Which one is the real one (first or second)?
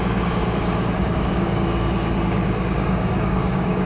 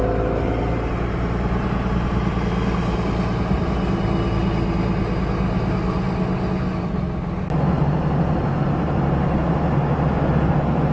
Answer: second